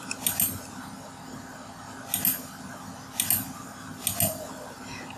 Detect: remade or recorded recorded